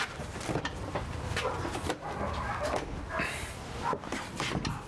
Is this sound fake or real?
real